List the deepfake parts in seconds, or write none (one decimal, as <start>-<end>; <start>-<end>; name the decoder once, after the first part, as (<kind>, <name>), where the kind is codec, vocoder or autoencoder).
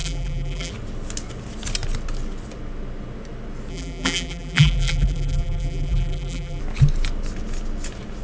0.0-0.7 (vocoder, BigVGAN v2); 3.7-6.6